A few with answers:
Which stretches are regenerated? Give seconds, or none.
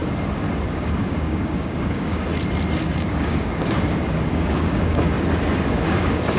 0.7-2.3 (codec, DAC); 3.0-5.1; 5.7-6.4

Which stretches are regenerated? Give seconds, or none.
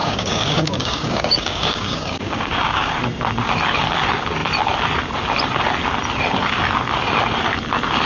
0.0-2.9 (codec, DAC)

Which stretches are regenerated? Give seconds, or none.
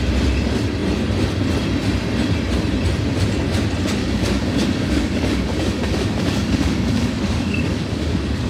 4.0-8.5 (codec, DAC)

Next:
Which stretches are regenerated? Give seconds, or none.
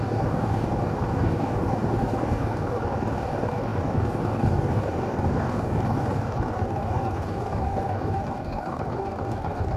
0.0-9.8 (codec, DAC)